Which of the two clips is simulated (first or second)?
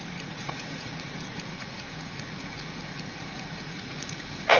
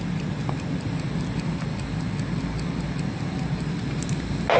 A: first